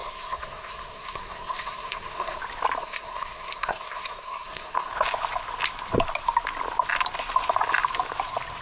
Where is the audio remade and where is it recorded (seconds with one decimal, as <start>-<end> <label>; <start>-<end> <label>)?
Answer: 0.0-2.4 remade; 2.4-2.8 recorded; 2.8-4.9 remade; 4.9-8.6 recorded